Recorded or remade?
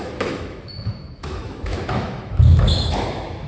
remade